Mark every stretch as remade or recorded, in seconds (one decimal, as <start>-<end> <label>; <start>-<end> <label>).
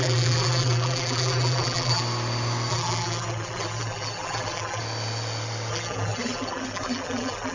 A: 0.0-2.0 remade; 2.0-2.7 recorded; 2.7-4.8 remade; 4.8-5.7 recorded; 5.7-7.5 remade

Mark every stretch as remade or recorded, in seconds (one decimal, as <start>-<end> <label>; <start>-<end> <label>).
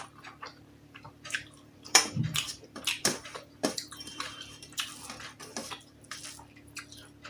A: 0.0-0.5 recorded; 0.5-4.9 remade; 4.9-5.6 recorded; 5.6-6.2 remade; 6.2-7.3 recorded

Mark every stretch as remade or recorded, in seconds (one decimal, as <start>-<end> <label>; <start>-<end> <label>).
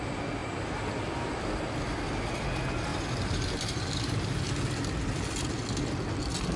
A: 0.0-2.9 recorded; 2.9-4.4 remade; 4.4-6.6 recorded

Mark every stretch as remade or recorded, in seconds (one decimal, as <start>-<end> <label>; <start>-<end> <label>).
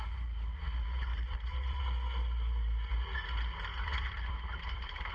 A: 0.0-1.1 recorded; 1.1-1.8 remade; 1.8-3.7 recorded; 3.7-5.1 remade